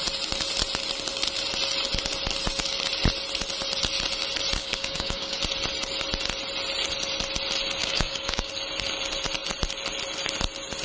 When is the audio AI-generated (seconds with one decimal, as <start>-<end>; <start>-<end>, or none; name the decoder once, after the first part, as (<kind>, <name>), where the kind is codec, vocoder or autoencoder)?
4.6-5.4 (codec, DAC); 7.8-8.5